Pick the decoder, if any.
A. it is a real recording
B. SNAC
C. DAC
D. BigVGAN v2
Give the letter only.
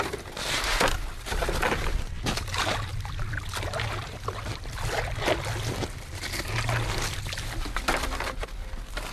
A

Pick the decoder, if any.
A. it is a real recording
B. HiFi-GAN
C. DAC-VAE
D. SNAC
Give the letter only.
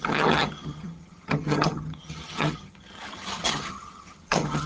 B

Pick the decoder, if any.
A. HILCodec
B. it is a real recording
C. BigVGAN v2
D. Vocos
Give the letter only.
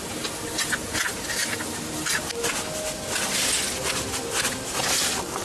B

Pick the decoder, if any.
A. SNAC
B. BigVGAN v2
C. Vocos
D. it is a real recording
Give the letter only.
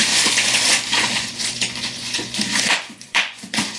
C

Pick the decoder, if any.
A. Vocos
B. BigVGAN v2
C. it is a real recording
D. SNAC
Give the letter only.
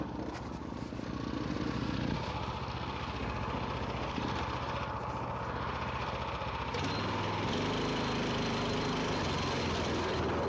C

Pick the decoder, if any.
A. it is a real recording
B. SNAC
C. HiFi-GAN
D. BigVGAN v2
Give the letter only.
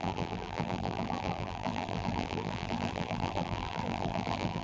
D